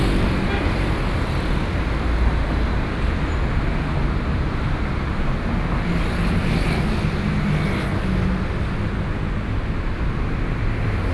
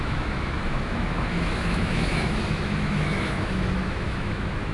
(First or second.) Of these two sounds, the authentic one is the first